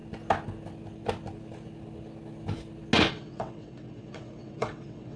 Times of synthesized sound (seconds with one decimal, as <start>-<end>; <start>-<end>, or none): 3.1-5.2